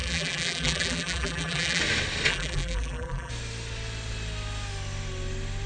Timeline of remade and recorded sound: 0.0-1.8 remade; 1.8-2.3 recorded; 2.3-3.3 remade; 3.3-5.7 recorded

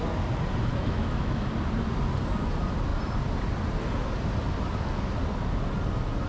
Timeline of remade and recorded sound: 0.0-0.7 recorded; 0.7-1.5 remade; 1.5-6.3 recorded